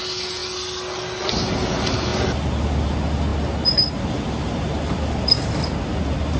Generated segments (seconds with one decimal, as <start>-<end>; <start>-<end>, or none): none

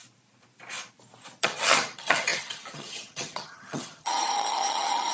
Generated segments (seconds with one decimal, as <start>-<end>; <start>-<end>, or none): 1.4-5.1